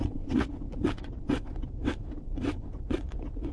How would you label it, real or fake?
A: fake